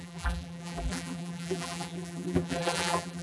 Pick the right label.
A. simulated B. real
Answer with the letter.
A